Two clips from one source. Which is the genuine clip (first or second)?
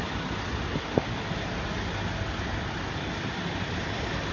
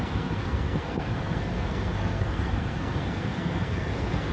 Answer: first